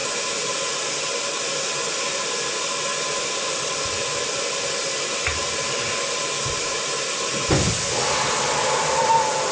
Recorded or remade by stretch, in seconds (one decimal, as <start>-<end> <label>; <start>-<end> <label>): 0.0-9.5 recorded